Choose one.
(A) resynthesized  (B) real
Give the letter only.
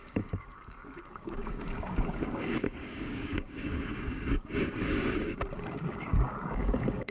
A